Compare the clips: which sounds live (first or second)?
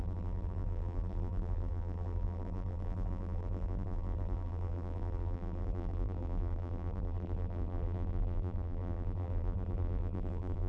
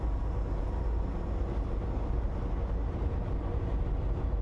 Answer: second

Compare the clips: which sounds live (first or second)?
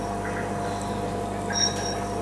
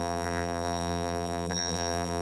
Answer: first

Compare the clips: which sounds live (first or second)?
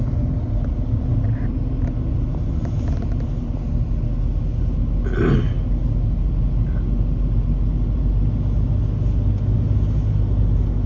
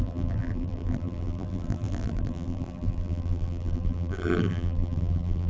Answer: first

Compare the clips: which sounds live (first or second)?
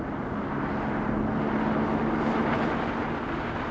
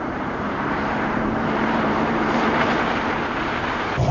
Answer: first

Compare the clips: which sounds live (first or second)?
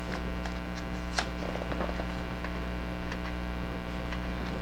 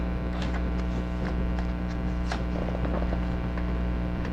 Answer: first